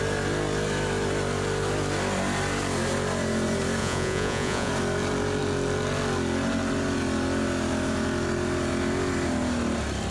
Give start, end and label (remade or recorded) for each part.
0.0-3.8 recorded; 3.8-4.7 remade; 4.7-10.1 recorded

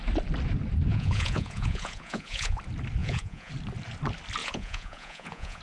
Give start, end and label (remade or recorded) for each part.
0.0-0.9 recorded; 0.9-2.6 remade; 2.6-3.0 recorded; 3.0-3.5 remade; 3.5-4.4 recorded; 4.4-5.6 remade

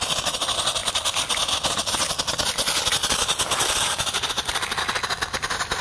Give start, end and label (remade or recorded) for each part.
0.0-5.8 recorded

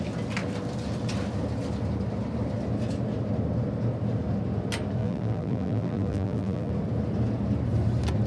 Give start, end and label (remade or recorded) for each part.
0.0-5.0 recorded; 5.0-6.7 remade; 6.7-8.3 recorded

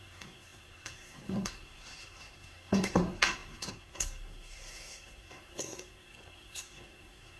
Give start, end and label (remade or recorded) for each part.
0.0-7.4 remade

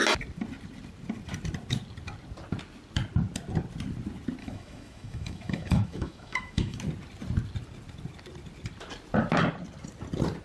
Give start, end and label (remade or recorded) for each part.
0.0-4.4 recorded; 4.4-6.8 remade; 6.8-10.4 recorded

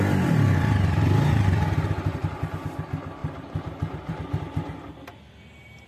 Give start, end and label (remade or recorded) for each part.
0.0-3.2 recorded; 3.2-4.4 remade; 4.4-5.9 recorded

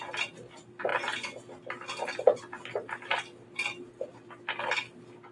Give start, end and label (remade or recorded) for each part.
0.0-5.3 recorded